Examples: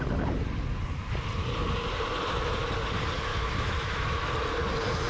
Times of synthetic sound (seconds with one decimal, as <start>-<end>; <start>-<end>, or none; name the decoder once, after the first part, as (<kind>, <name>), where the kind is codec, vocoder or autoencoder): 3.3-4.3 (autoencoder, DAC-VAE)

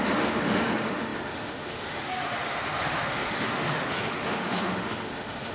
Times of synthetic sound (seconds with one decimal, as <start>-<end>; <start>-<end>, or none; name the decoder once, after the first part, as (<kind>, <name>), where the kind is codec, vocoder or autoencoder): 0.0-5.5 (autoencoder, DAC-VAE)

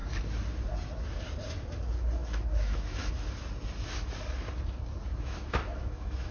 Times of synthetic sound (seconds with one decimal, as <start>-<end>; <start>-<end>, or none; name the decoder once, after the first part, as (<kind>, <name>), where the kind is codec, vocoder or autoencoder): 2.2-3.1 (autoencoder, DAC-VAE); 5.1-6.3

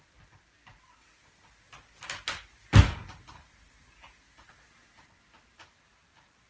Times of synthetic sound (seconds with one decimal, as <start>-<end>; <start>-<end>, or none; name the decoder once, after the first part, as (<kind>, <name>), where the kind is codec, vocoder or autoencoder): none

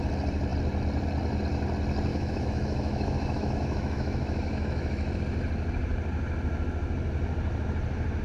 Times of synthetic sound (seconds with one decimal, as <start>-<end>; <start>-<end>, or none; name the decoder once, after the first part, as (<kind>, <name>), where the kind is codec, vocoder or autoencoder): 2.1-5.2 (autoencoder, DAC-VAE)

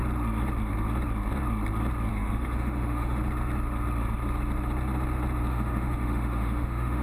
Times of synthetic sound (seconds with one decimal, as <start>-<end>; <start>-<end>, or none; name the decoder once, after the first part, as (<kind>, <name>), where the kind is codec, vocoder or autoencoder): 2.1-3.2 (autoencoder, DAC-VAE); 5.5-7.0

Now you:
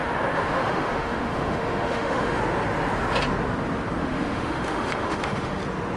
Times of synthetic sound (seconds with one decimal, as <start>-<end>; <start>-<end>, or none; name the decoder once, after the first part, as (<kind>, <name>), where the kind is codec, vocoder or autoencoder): 0.0-2.4 (autoencoder, DAC-VAE); 4.0-5.6